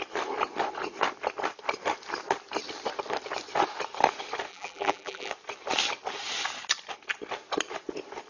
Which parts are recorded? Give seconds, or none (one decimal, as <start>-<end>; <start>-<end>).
0.0-4.5; 5.3-8.3